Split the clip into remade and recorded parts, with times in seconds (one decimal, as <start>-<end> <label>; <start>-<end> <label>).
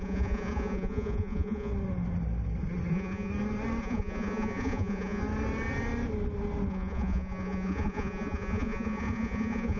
0.0-1.7 remade; 1.7-2.9 recorded; 2.9-3.3 remade; 3.3-3.8 recorded; 3.8-5.2 remade; 5.2-6.7 recorded; 6.7-9.8 remade